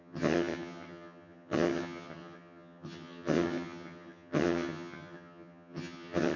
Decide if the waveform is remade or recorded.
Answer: remade